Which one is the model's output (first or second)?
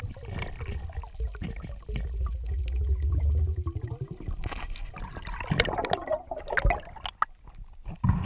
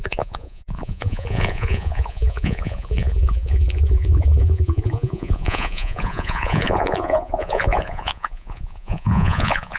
second